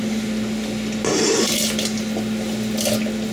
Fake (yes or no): no